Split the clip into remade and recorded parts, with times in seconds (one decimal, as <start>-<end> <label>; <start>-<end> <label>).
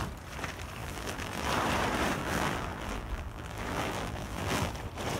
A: 0.0-0.8 recorded; 0.8-1.5 remade; 1.5-2.2 recorded; 2.2-4.7 remade; 4.7-5.2 recorded